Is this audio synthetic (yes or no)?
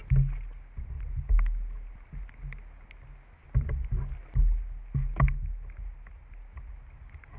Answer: no